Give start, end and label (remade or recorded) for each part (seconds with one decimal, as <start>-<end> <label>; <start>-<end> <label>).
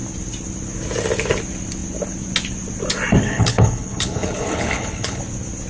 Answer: 0.0-3.2 recorded; 3.2-5.2 remade; 5.2-5.7 recorded